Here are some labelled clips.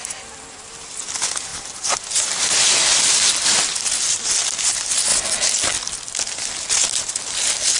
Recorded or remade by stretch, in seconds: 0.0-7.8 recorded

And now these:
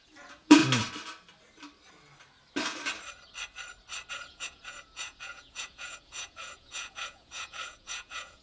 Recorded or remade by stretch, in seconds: 0.0-0.6 remade; 0.6-4.1 recorded; 4.1-8.4 remade

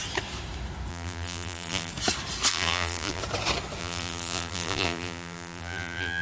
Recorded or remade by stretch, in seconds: 0.0-0.9 recorded; 0.9-1.9 remade; 1.9-2.5 recorded; 2.5-3.2 remade; 3.2-3.8 recorded; 3.8-6.2 remade

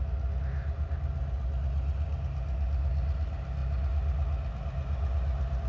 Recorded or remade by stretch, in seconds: 0.0-5.7 recorded

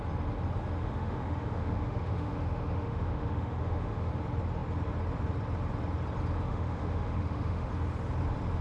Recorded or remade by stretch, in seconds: 0.0-0.8 recorded; 0.8-4.1 remade; 4.1-6.5 recorded; 6.5-7.7 remade; 7.7-8.6 recorded